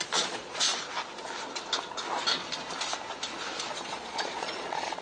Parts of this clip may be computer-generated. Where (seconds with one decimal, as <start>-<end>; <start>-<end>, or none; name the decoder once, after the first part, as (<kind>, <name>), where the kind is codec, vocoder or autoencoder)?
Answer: 0.0-0.7 (vocoder, Vocos); 3.7-5.0